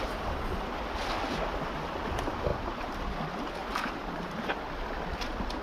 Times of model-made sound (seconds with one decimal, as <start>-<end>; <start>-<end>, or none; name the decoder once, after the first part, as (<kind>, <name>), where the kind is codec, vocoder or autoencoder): 2.5-3.1 (vocoder, BigVGAN v2); 3.6-4.4